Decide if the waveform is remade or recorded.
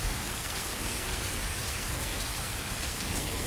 remade